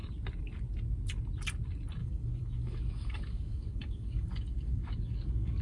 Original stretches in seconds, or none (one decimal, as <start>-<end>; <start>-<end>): 0.0-2.0